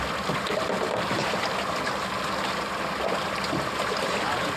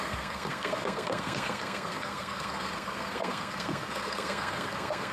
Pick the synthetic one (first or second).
second